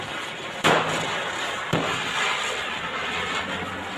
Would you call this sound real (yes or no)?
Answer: yes